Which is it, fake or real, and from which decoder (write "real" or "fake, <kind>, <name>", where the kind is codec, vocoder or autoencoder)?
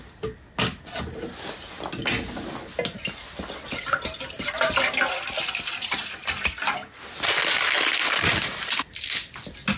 real